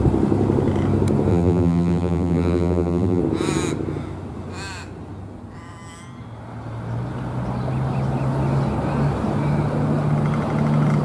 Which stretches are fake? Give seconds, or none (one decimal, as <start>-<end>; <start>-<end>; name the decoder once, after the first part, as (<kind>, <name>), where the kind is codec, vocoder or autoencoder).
1.3-3.2 (vocoder, BigVGAN v2)